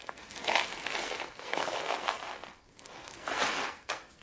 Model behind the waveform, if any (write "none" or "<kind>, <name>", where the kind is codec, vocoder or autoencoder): codec, SNAC